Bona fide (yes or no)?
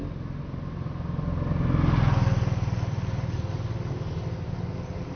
yes